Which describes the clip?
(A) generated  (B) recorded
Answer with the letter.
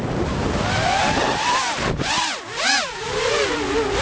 B